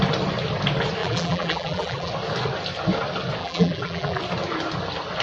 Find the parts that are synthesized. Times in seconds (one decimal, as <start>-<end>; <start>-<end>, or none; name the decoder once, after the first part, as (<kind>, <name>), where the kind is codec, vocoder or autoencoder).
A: 1.0-2.1 (vocoder, BigVGAN v2); 3.4-4.2